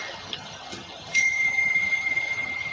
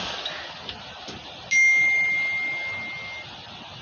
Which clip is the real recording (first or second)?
second